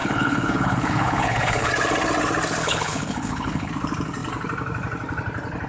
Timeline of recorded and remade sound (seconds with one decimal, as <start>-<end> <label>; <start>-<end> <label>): 0.0-1.7 remade; 1.7-2.6 recorded; 2.6-3.7 remade; 3.7-5.7 recorded